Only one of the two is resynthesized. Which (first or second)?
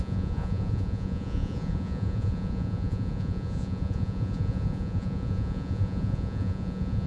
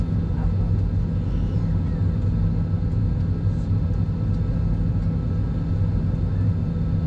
first